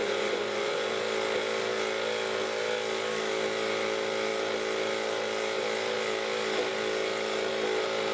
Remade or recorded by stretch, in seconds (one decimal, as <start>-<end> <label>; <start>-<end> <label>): 0.0-0.9 remade; 0.9-8.1 recorded